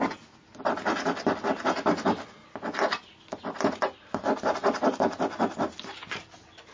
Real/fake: real